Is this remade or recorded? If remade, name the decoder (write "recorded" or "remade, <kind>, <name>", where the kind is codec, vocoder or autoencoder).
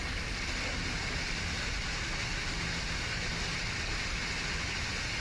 recorded